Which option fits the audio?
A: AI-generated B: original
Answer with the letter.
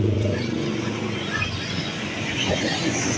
A